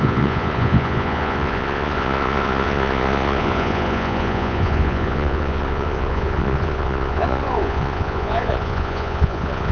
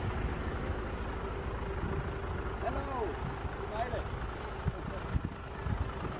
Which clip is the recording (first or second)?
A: second